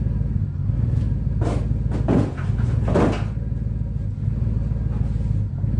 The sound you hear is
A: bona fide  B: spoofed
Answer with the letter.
A